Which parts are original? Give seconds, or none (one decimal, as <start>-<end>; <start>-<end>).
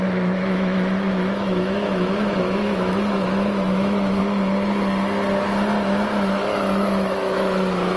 4.2-6.4